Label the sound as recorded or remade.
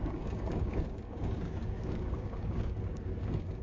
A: remade